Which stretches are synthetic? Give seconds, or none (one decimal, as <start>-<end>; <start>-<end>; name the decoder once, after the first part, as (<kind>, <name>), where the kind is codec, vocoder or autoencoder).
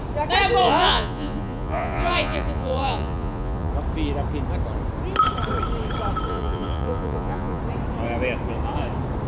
0.6-3.7 (vocoder, Vocos); 6.3-7.6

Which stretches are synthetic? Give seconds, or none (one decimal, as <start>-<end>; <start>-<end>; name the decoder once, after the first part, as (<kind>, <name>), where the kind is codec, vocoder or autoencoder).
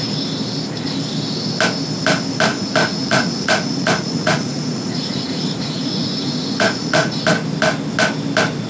2.5-7.2 (vocoder, Vocos)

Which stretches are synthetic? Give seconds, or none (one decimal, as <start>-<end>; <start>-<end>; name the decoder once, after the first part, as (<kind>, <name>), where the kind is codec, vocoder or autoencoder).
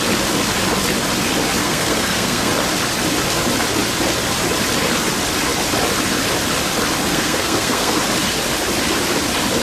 1.6-2.5 (codec, SNAC); 7.1-8.0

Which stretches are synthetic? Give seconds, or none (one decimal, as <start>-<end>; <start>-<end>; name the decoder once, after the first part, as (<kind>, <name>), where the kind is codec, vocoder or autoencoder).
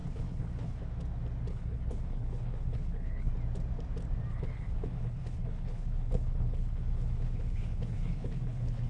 0.0-0.8 (codec, HILCodec); 1.5-3.3; 4.3-8.9